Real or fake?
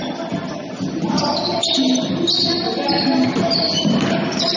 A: real